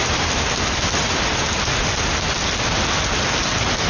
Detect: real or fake real